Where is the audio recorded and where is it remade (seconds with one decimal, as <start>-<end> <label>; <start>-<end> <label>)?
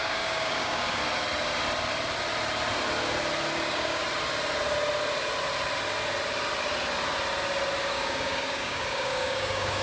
0.0-1.0 remade; 1.0-3.6 recorded; 3.6-4.0 remade; 4.0-7.9 recorded; 7.9-9.8 remade